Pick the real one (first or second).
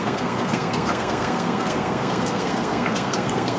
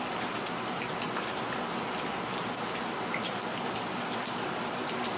second